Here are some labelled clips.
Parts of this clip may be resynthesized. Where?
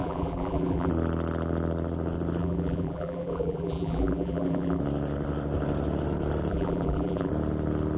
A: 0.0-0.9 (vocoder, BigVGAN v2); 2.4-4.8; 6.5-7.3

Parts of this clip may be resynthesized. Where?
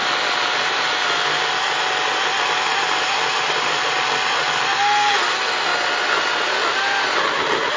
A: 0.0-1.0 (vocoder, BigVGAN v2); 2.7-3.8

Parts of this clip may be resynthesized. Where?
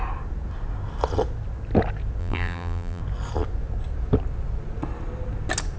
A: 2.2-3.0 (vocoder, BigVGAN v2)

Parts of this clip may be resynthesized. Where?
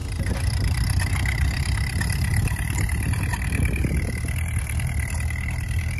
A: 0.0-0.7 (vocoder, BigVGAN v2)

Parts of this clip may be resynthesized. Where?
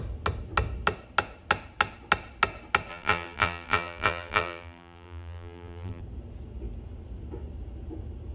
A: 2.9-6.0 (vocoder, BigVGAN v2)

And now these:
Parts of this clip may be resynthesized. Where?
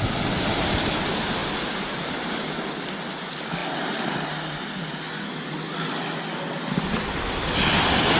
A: 1.4-2.3 (vocoder, BigVGAN v2)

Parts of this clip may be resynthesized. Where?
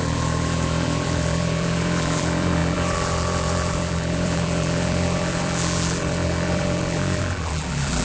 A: 0.0-8.0 (vocoder, BigVGAN v2)